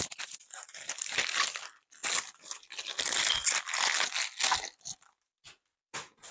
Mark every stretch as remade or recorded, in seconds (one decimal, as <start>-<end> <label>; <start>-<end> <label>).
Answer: 0.0-6.3 recorded